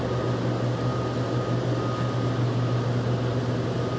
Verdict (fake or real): real